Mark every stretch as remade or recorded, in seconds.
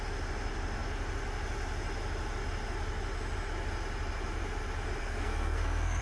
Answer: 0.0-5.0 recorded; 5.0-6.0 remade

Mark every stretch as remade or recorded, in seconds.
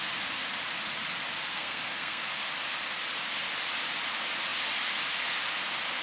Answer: 0.0-1.5 recorded; 1.5-2.2 remade; 2.2-6.0 recorded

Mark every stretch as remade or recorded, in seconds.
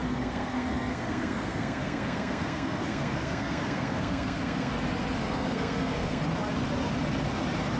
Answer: 0.0-4.7 remade; 4.7-5.2 recorded; 5.2-6.2 remade; 6.2-7.8 recorded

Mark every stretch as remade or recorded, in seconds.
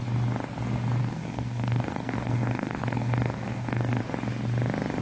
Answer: 0.0-1.0 recorded; 1.0-4.0 remade; 4.0-5.0 recorded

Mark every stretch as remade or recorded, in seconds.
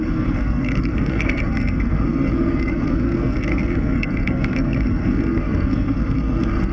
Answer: 0.0-6.7 remade